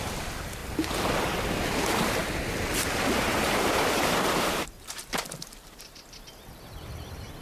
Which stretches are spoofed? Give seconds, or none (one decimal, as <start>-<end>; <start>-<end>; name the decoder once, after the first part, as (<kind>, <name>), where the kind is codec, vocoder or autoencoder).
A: 0.0-0.6 (vocoder, BigVGAN v2); 4.9-7.4